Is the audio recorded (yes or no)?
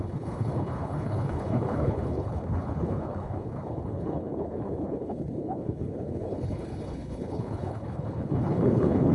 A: no